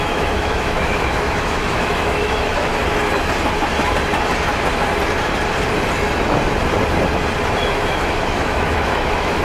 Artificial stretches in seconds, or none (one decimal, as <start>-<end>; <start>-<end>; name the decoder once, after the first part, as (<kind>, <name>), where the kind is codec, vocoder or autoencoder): 0.0-2.8 (autoencoder, DAC-VAE); 7.6-9.4